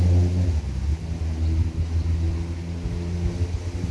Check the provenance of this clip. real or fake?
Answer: real